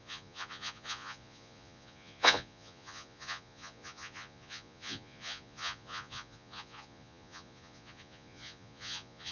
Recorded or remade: remade